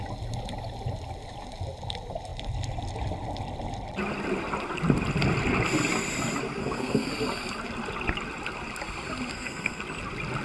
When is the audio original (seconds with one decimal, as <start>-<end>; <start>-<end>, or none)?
0.0-6.6; 7.1-9.3; 9.8-10.4